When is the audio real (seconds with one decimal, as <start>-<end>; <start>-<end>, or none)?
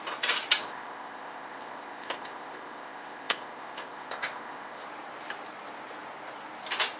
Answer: 0.0-0.6; 4.8-7.0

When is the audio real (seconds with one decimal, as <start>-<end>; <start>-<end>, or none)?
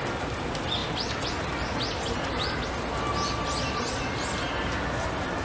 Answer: 0.0-5.4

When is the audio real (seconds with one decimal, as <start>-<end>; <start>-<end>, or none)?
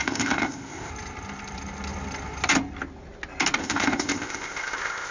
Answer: 0.9-3.6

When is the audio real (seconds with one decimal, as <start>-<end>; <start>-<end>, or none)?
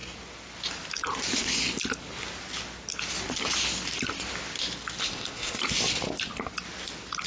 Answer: 0.0-5.0; 5.6-7.3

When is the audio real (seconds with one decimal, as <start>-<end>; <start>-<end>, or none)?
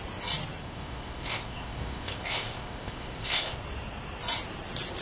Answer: 0.0-0.6; 3.6-5.0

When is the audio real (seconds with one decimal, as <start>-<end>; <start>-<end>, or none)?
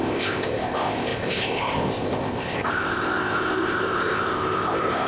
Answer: none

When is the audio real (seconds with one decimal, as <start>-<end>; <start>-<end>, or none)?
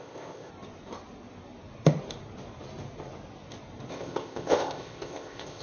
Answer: 0.5-3.9